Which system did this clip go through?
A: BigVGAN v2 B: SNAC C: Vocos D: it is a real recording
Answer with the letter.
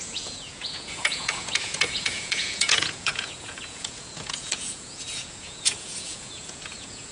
C